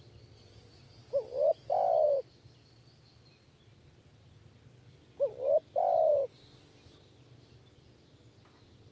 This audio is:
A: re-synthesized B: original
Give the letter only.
B